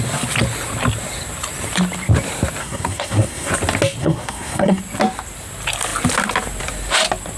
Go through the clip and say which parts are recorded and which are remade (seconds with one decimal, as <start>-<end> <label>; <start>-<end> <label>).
0.0-2.6 recorded; 2.6-3.5 remade; 3.5-4.0 recorded; 4.0-4.8 remade; 4.8-7.4 recorded